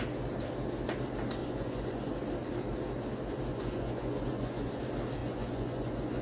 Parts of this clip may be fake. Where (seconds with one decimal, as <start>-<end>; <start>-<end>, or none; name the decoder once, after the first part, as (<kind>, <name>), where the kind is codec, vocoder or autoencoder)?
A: 1.4-2.1 (vocoder, Vocos); 3.5-4.8; 5.2-6.2